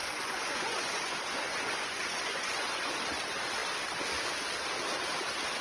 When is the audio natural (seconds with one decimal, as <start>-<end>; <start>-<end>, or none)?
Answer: 3.0-5.6